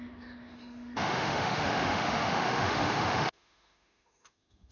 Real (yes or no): no